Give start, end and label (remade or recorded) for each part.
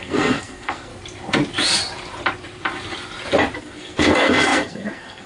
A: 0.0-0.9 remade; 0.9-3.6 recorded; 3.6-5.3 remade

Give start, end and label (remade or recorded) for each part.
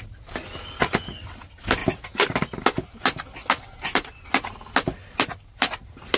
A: 0.0-6.2 recorded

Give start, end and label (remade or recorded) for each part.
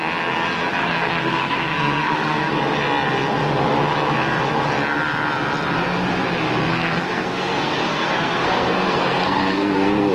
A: 0.0-0.8 recorded; 0.8-2.5 remade; 2.5-6.7 recorded; 6.7-10.1 remade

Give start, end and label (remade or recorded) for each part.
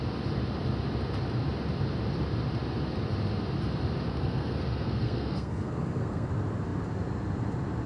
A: 0.0-4.1 recorded; 4.1-6.3 remade; 6.3-7.9 recorded